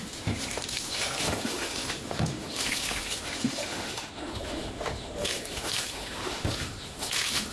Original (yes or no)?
no